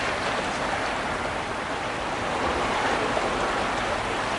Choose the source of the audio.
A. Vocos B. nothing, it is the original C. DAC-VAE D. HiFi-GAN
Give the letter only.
B